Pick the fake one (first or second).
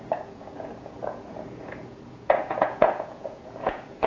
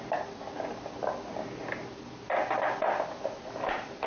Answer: first